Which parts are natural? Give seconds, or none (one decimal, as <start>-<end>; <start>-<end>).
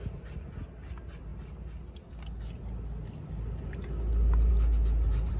0.0-5.4